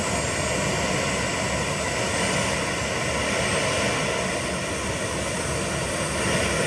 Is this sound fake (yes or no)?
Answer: no